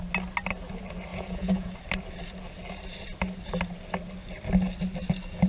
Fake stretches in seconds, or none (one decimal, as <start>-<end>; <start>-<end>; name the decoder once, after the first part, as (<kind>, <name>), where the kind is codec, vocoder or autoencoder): 1.1-1.7 (vocoder, Vocos)